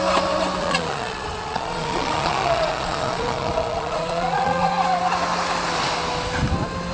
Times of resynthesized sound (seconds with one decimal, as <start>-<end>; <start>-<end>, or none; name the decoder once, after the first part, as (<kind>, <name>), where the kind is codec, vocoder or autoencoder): 0.6-4.7 (vocoder, Vocos)